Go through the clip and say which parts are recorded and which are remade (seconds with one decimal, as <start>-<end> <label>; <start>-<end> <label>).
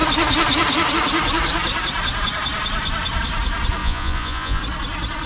0.0-3.8 recorded; 3.8-4.6 remade; 4.6-5.3 recorded